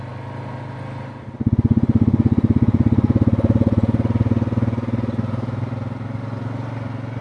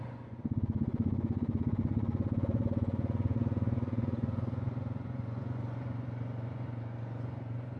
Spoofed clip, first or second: second